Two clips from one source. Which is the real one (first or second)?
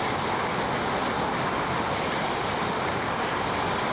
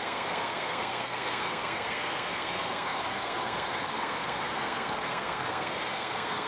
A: first